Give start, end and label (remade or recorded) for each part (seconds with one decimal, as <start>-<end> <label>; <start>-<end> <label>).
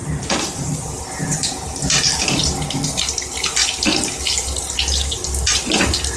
0.0-2.5 remade; 2.5-6.2 recorded